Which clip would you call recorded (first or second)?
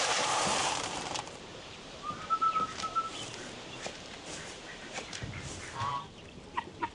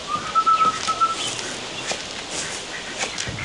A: second